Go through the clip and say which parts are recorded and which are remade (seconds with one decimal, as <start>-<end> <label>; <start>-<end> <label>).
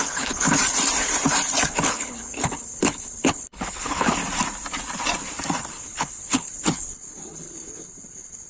0.0-0.6 remade; 0.6-1.7 recorded; 1.7-4.2 remade; 4.2-5.6 recorded; 5.6-8.5 remade